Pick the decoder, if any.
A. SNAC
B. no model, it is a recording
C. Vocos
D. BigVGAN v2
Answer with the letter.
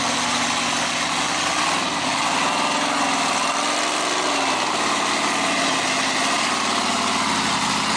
B